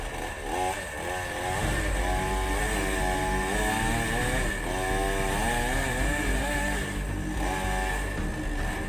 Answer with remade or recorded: recorded